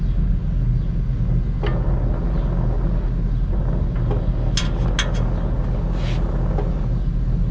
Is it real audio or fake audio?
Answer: real